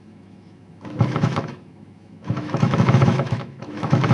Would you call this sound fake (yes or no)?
yes